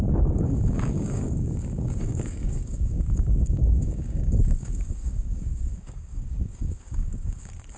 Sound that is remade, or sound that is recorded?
remade